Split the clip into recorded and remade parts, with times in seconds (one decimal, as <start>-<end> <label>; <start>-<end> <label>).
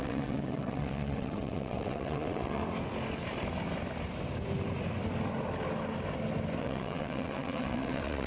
0.0-2.6 remade; 2.6-6.6 recorded; 6.6-8.3 remade